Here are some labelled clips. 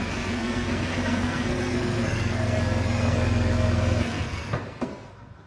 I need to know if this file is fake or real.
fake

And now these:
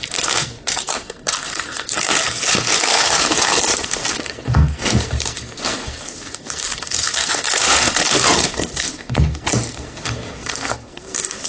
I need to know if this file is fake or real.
fake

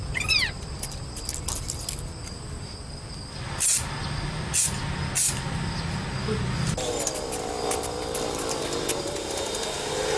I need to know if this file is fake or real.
real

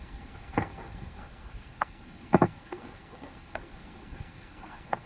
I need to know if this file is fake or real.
fake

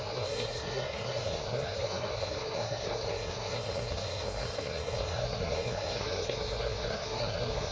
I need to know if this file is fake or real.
fake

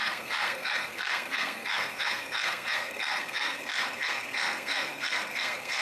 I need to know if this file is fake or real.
fake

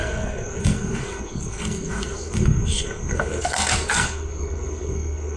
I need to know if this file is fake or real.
fake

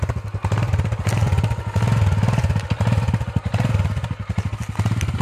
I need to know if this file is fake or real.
real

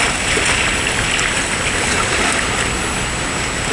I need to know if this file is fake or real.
real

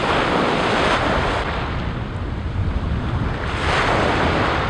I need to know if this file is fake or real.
real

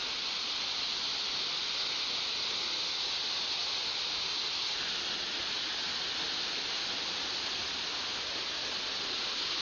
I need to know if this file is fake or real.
real